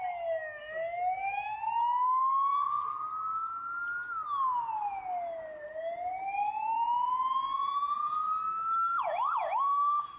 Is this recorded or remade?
recorded